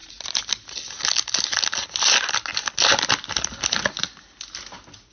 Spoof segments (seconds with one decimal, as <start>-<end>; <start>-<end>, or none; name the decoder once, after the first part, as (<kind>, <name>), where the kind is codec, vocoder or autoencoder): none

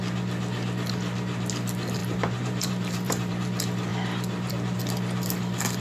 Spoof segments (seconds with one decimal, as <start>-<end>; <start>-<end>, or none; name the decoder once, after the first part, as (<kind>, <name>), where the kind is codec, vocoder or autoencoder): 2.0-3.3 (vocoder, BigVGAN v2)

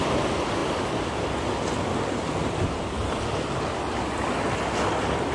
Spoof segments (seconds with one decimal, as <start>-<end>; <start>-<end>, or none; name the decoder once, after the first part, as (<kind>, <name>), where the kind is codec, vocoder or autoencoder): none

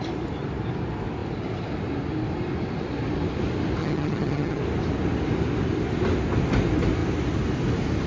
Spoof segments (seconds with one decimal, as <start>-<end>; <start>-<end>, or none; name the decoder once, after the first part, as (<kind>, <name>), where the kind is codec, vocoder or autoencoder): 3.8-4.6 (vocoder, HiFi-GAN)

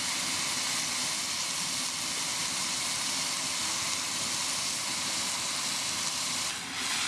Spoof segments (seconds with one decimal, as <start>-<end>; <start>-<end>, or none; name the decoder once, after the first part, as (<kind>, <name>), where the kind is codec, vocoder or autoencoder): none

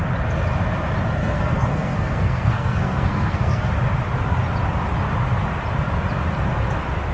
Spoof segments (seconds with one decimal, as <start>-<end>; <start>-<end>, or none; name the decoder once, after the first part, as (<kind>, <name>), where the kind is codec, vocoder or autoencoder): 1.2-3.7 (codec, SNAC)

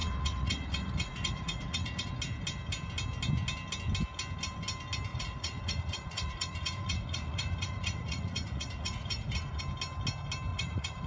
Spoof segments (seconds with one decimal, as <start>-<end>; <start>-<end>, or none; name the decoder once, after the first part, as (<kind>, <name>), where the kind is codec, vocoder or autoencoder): 0.0-2.1 (vocoder, Vocos); 5.1-9.6; 10.5-11.1

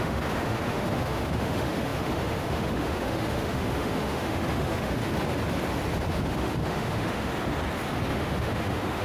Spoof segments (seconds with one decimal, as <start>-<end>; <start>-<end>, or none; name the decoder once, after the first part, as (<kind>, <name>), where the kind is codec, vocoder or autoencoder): 0.0-5.0 (autoencoder, DAC-VAE); 6.1-7.3; 8.1-9.0